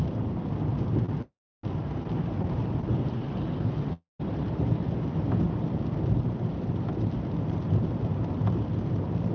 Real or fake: real